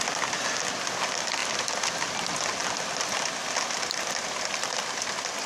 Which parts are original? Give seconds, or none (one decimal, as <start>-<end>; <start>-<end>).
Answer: 0.0-5.5

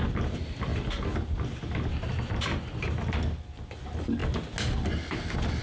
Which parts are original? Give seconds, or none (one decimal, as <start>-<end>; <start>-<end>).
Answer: 0.0-5.6

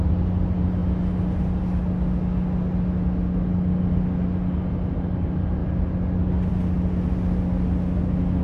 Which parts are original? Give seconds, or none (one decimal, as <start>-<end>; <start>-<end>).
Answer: 0.0-8.4

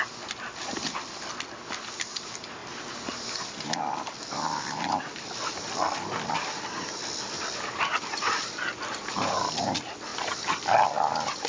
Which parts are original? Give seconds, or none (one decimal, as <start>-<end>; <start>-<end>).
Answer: 0.0-11.5